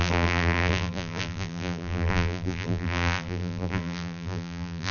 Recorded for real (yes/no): no